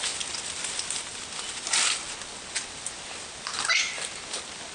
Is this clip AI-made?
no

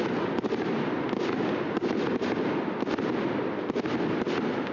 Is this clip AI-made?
no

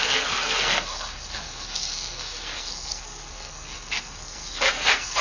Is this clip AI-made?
yes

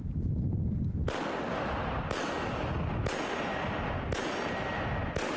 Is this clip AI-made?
no